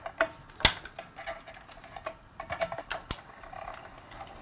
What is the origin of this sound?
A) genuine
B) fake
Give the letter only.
A